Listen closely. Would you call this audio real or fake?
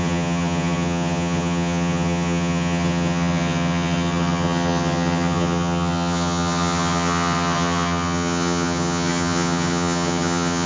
fake